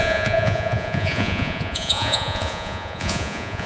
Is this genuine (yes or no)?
no